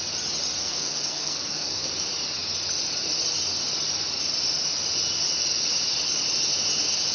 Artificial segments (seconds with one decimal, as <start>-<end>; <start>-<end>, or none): 0.6-1.9